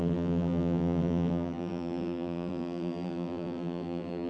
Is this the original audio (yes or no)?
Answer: no